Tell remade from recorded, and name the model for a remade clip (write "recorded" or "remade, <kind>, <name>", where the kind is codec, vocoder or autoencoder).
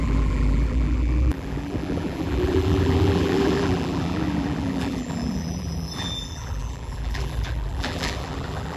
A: remade, vocoder, BigVGAN v2